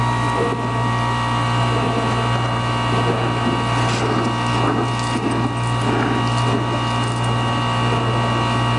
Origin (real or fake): real